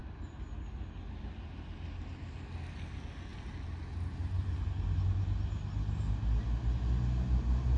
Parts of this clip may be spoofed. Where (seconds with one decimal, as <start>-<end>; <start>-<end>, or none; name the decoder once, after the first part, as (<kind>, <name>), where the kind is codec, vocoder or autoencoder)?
none